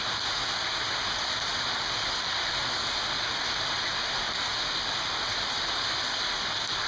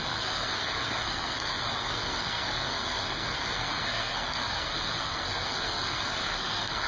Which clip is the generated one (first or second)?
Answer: second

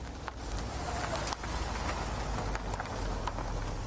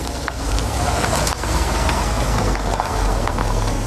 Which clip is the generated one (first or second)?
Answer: second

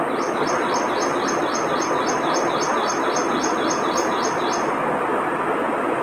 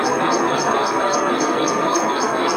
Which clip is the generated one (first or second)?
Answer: second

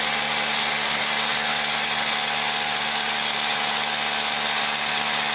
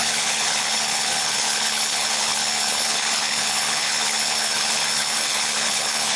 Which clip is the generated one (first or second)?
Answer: second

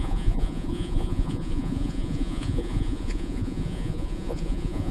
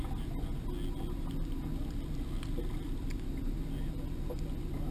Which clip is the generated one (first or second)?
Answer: first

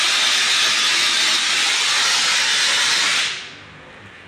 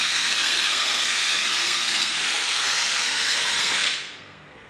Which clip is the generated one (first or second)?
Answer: second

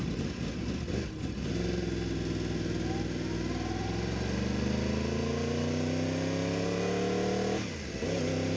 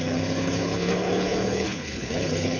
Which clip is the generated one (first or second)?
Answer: second